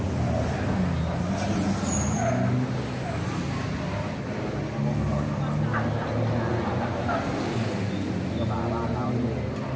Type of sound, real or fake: real